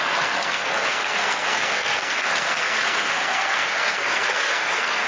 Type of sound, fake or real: fake